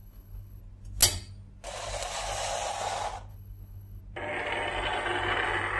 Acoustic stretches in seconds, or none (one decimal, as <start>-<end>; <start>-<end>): 0.6-3.3; 4.0-5.8